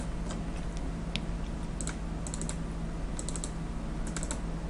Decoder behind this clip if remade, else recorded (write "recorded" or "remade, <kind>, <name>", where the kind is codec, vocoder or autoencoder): recorded